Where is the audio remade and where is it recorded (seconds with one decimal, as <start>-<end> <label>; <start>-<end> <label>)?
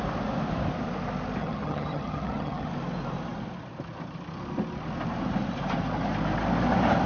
0.0-1.4 recorded; 1.4-2.7 remade; 2.7-7.1 recorded